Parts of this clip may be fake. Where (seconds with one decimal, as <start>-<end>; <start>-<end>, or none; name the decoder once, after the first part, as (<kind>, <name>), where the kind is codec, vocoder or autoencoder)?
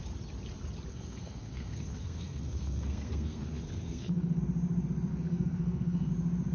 0.9-4.4 (codec, SNAC); 5.1-6.1